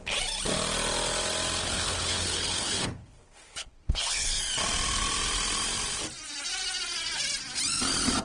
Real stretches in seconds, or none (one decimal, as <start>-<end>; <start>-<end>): 0.0-1.6; 4.4-8.2